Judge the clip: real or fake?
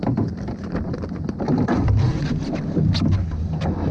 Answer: real